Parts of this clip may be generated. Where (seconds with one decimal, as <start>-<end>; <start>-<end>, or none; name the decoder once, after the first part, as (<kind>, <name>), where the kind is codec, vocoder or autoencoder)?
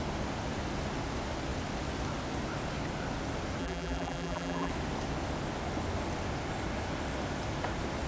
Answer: 3.6-4.7 (vocoder, BigVGAN v2)